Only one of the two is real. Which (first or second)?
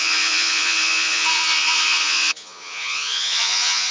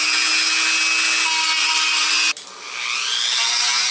second